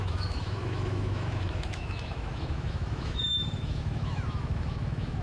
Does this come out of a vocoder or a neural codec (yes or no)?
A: yes